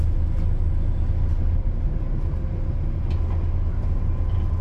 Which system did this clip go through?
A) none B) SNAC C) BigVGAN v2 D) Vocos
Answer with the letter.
A